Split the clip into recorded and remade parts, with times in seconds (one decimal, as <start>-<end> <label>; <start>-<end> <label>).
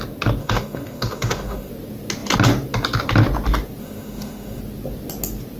0.0-0.4 recorded; 0.4-1.7 remade; 1.7-3.8 recorded; 3.8-4.6 remade; 4.6-5.6 recorded